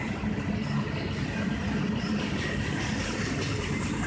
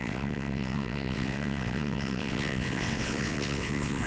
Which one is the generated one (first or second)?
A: second